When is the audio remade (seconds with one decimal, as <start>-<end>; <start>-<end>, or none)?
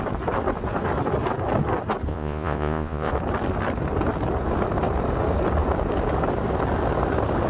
2.1-3.1